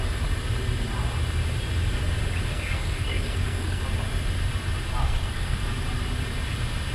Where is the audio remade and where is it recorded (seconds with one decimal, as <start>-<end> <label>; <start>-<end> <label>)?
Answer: 0.0-2.5 recorded; 2.5-3.8 remade; 3.8-5.0 recorded; 5.0-5.6 remade; 5.6-6.9 recorded